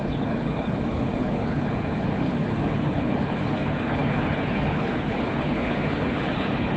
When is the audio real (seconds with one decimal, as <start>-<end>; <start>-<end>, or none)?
none